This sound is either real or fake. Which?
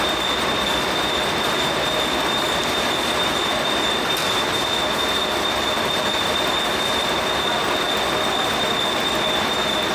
real